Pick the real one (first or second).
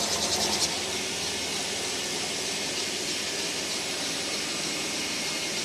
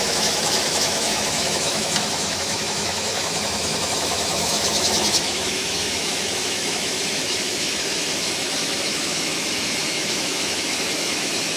first